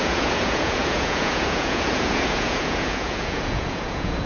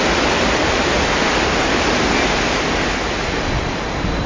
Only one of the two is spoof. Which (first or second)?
first